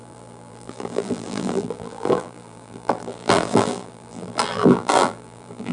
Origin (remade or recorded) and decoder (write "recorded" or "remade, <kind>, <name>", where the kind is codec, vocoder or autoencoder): remade, vocoder, BigVGAN v2